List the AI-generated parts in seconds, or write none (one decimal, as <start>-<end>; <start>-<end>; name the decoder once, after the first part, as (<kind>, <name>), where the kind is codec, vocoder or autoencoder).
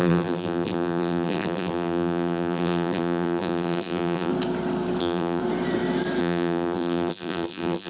0.0-4.3 (vocoder, BigVGAN v2); 5.0-5.4; 6.2-7.9